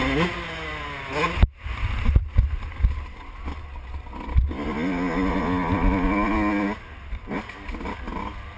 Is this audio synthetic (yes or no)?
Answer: no